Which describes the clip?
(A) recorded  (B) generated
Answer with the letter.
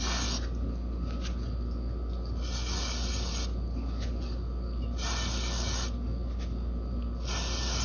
A